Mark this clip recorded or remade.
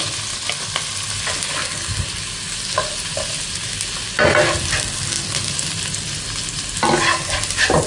recorded